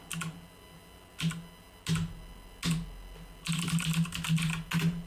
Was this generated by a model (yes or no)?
no